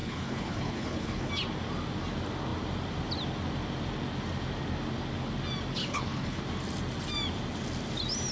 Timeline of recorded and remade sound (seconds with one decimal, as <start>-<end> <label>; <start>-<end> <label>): 0.0-1.3 remade; 1.3-5.8 recorded; 5.8-6.4 remade; 6.4-8.3 recorded